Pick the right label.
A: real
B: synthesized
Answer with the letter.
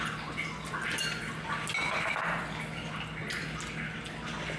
A